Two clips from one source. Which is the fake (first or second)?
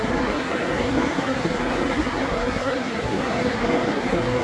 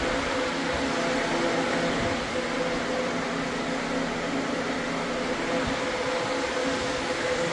first